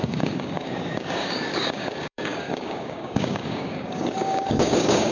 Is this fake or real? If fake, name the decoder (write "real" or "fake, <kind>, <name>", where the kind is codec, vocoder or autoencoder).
fake, codec, DAC